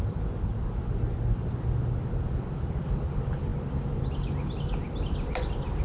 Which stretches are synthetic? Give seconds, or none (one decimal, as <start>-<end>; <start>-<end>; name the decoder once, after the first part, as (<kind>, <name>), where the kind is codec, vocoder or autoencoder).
none